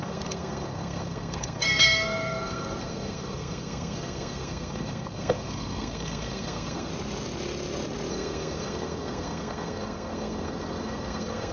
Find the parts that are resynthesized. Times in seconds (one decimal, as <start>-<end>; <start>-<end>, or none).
0.0-6.9; 8.1-11.5